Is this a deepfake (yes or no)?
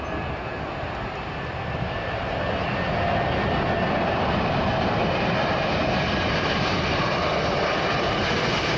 no